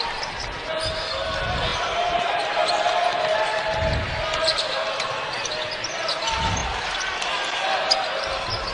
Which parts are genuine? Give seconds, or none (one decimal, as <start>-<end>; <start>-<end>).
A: 0.0-8.7